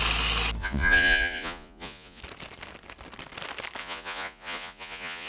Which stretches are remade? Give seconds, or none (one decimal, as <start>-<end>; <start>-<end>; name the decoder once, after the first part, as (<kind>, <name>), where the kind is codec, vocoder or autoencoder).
0.6-2.2 (vocoder, Vocos); 3.8-5.3